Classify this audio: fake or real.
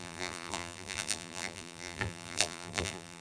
fake